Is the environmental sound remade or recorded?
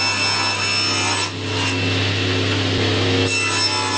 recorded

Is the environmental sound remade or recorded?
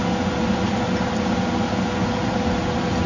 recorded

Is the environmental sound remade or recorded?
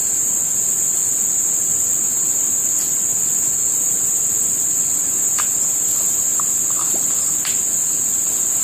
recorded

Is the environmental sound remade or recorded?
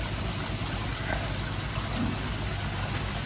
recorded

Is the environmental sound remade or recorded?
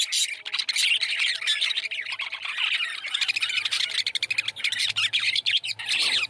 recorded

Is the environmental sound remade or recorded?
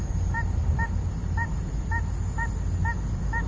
recorded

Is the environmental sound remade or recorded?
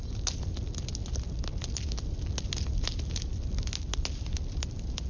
recorded